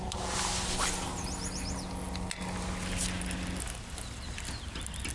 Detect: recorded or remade recorded